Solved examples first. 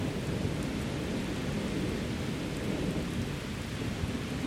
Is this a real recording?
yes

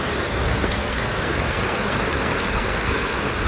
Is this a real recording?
no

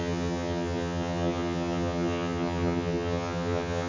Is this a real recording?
no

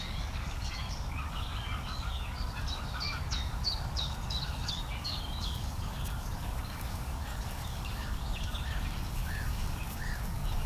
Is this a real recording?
no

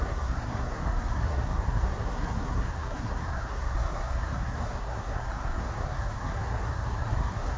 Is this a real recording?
no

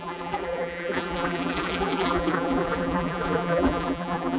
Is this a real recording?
no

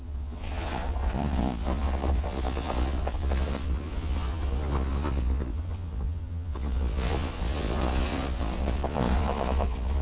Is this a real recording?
no